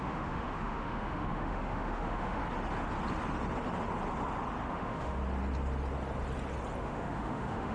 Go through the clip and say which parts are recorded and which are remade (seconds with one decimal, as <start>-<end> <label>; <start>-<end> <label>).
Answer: 0.0-2.4 remade; 2.4-4.7 recorded; 4.7-5.2 remade; 5.2-6.8 recorded; 6.8-7.7 remade